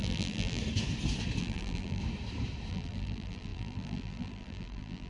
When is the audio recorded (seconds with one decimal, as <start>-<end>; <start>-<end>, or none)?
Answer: 0.6-1.4; 2.0-2.7